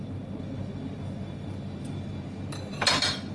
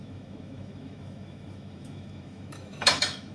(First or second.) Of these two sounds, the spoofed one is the second